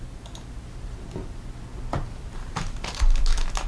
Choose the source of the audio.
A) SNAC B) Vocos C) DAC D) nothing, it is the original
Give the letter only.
D